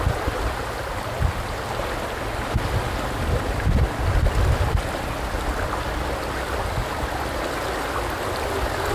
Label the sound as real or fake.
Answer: real